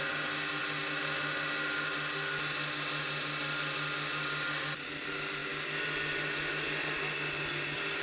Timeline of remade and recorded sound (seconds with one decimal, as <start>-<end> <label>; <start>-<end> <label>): 0.0-8.0 recorded